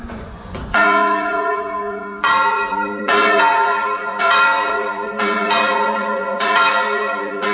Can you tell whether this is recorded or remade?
remade